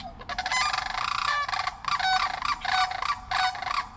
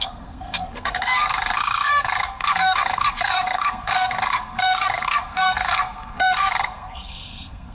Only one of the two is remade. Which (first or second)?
second